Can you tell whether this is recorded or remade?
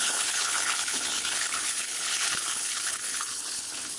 remade